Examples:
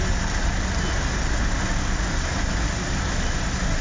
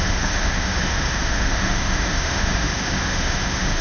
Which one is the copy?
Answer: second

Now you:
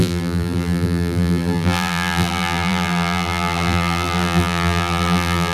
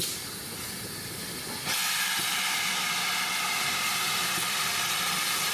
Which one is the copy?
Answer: first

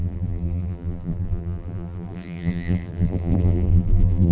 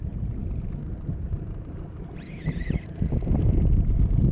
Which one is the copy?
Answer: first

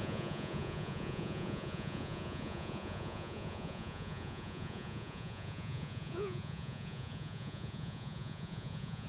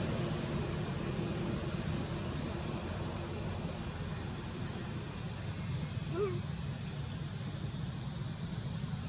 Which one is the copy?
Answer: first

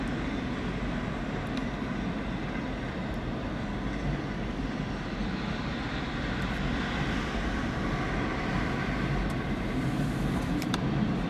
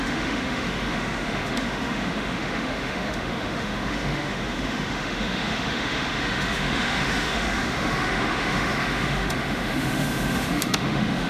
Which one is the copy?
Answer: second